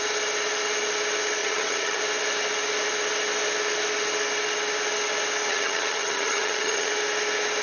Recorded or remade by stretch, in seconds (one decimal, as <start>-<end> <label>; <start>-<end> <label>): 0.0-1.4 recorded; 1.4-2.0 remade; 2.0-5.5 recorded; 5.5-6.9 remade; 6.9-7.6 recorded